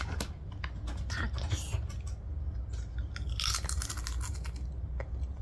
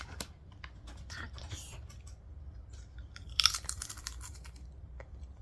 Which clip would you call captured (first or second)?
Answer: first